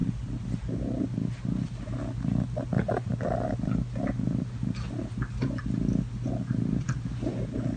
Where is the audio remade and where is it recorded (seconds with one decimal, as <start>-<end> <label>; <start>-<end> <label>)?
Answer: 0.0-7.8 recorded